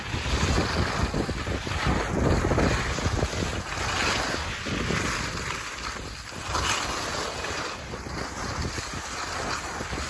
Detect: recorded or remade recorded